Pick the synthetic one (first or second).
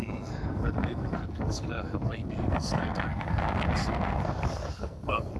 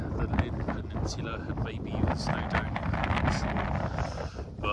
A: first